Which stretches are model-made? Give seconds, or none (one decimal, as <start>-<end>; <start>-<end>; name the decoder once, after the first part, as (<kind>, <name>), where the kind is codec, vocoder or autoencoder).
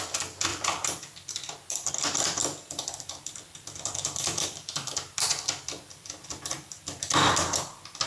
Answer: 0.5-1.9 (vocoder, BigVGAN v2); 2.4-7.3